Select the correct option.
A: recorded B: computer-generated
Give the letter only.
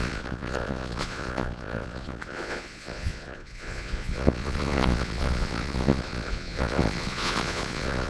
B